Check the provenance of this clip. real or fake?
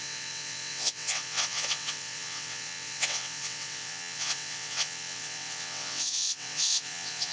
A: fake